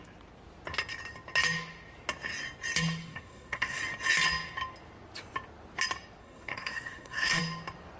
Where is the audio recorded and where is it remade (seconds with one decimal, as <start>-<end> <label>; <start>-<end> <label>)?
0.0-3.0 recorded; 3.0-3.8 remade; 3.8-6.2 recorded; 6.2-7.4 remade; 7.4-8.0 recorded